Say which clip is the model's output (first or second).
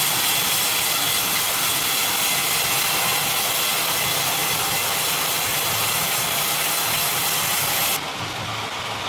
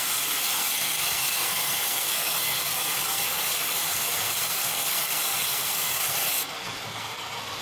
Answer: second